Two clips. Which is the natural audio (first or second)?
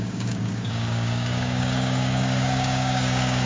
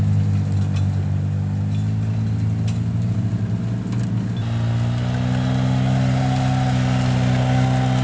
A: second